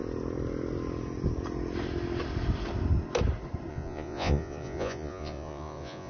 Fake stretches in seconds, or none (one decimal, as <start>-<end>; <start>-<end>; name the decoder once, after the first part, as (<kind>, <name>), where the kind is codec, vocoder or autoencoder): 3.7-6.1 (vocoder, Vocos)